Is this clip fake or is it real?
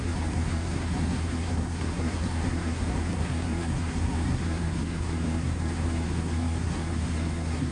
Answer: fake